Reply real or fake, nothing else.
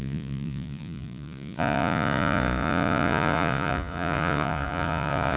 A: fake